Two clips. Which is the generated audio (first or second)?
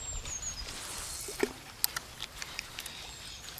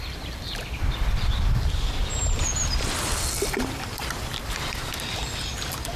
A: second